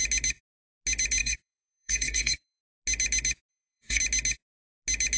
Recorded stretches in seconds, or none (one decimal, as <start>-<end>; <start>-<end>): 0.0-1.2; 2.6-3.5; 4.0-5.2